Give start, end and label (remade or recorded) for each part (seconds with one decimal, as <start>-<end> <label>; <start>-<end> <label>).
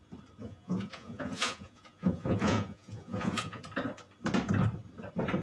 0.0-0.4 recorded; 0.4-3.6 remade; 3.6-5.4 recorded